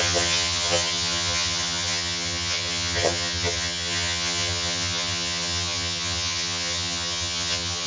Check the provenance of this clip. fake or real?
fake